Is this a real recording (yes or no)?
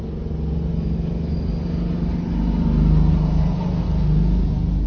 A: yes